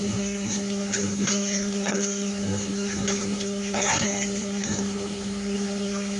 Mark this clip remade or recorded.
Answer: remade